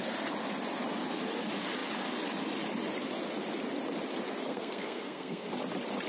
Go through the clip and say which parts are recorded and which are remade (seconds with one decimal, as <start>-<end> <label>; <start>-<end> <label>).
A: 0.0-4.5 recorded; 4.5-5.5 remade; 5.5-6.1 recorded